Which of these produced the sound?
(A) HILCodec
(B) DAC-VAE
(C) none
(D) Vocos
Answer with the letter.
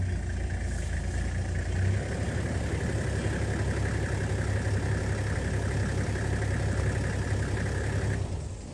C